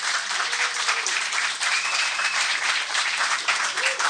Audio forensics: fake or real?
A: fake